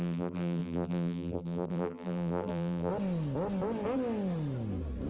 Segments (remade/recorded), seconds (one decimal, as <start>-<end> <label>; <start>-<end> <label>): 0.0-2.9 remade; 2.9-5.1 recorded